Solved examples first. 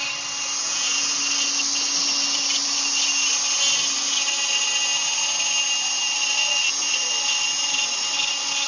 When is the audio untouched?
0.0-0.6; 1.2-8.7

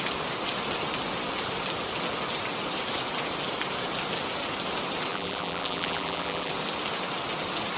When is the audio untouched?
0.0-5.1; 6.5-7.8